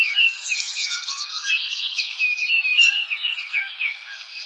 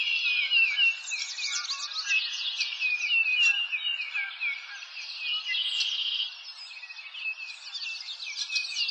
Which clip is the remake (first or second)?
first